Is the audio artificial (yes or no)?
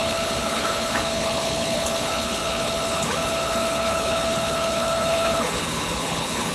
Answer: yes